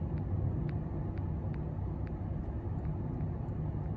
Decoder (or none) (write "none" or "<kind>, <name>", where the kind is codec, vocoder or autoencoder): none